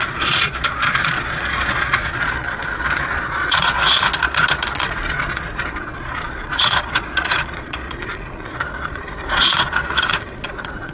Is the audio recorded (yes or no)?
no